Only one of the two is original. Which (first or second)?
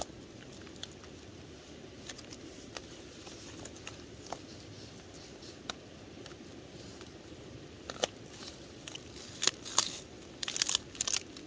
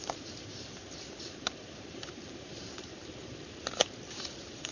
first